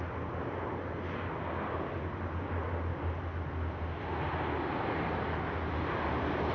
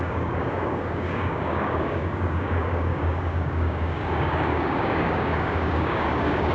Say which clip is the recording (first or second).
first